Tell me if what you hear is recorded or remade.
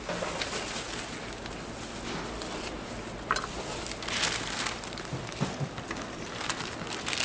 recorded